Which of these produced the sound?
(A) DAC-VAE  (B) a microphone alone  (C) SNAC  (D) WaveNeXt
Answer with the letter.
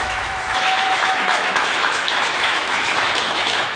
A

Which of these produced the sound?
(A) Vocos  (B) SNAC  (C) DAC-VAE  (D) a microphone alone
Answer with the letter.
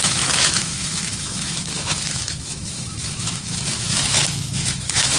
C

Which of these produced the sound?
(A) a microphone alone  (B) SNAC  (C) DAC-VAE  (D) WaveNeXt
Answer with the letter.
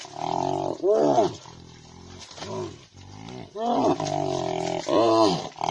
A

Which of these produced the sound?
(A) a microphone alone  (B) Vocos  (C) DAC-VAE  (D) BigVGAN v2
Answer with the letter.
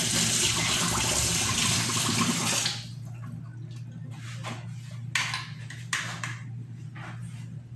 A